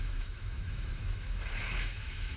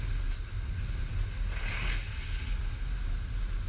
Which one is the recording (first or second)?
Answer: second